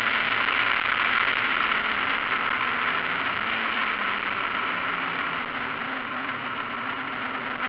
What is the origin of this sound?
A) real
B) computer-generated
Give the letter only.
A